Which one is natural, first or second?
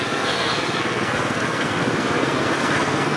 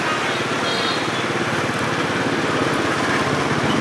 second